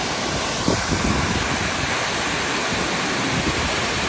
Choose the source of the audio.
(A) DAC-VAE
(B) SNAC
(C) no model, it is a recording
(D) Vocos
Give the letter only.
C